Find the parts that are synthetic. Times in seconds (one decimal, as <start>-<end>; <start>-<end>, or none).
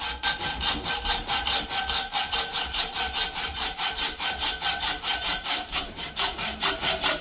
2.1-6.1